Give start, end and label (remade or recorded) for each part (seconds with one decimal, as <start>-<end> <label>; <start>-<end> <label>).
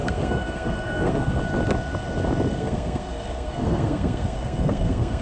0.0-1.4 remade; 1.4-2.5 recorded; 2.5-5.2 remade